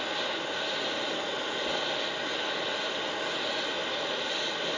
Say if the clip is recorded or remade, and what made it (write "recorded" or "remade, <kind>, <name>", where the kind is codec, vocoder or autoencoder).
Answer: recorded